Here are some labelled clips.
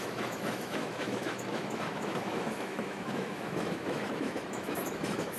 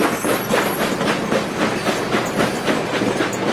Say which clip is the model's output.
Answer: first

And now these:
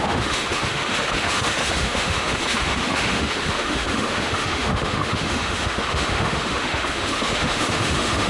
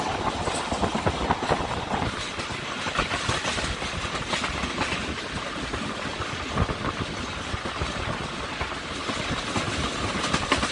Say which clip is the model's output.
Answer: first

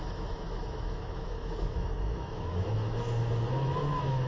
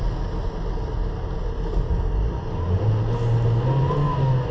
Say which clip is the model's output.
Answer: first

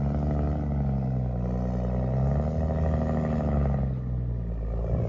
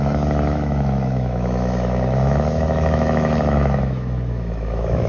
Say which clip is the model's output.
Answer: second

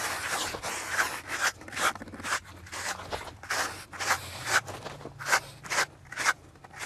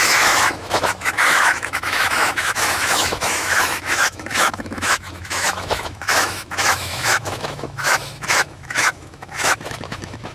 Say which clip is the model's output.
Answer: second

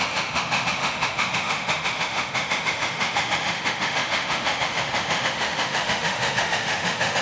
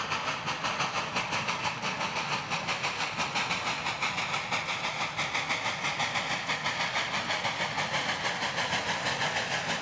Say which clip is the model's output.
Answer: first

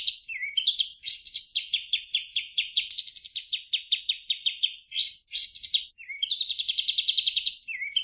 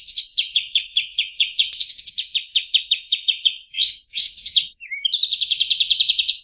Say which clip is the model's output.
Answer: second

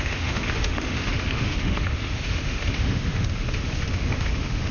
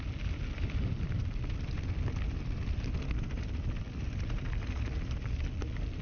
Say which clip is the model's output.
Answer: first